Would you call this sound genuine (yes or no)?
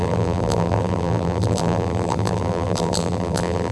no